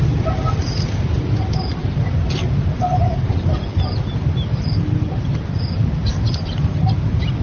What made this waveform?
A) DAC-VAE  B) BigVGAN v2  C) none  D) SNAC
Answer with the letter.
C